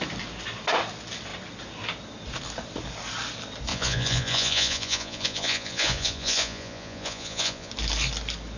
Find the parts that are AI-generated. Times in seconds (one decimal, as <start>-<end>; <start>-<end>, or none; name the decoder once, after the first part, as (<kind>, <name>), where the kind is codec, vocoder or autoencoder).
3.7-7.7 (vocoder, Vocos)